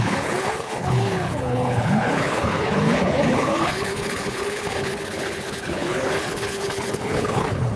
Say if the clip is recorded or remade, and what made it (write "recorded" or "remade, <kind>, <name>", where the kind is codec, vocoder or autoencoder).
remade, codec, HILCodec